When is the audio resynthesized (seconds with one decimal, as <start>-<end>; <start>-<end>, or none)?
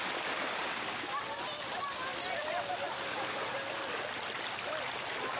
none